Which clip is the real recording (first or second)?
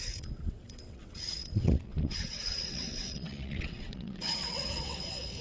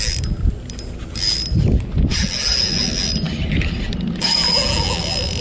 second